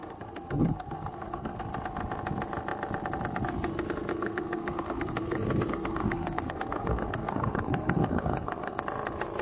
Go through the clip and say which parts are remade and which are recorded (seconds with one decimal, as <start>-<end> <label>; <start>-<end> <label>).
0.0-1.6 remade; 1.6-4.1 recorded; 4.1-8.8 remade; 8.8-9.4 recorded